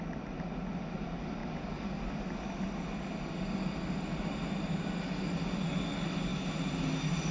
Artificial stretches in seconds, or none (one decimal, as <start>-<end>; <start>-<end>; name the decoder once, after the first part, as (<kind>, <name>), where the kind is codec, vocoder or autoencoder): none